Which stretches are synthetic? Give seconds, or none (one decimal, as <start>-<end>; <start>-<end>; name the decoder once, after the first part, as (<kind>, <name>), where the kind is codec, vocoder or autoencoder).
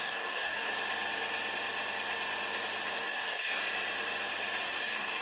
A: 0.0-0.7 (codec, DAC); 2.9-3.6; 4.6-5.2